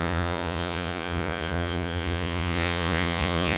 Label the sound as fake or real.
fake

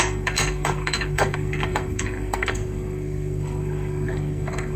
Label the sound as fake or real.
fake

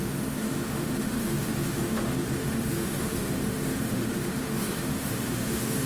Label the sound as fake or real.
fake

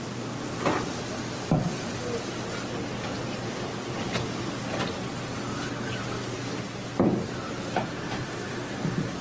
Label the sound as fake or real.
real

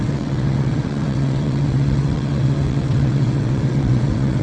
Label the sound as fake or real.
fake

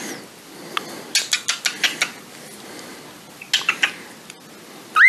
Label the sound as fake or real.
real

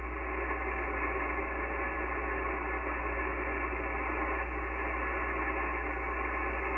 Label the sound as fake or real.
real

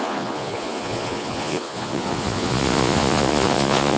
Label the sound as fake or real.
fake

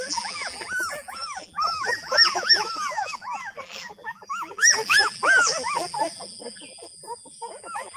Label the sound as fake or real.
fake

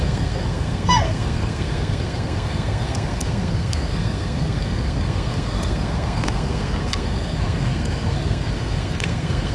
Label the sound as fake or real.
fake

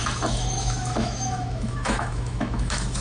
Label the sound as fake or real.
fake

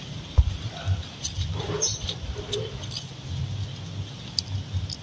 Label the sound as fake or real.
real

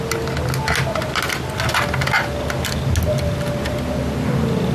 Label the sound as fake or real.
real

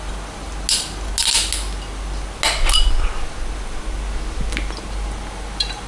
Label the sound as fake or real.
real